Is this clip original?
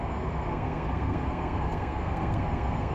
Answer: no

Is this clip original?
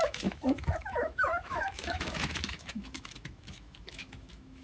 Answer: no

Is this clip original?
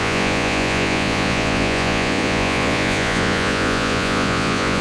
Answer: no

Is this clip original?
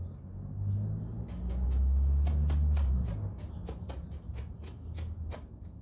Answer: yes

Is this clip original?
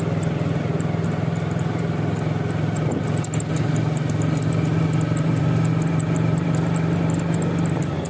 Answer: yes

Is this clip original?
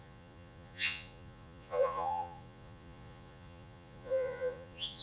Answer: no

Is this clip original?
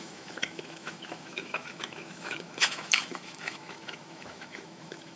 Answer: no